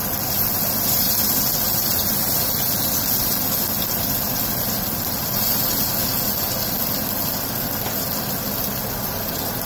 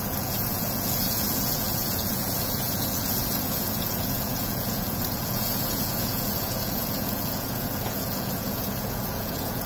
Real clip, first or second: first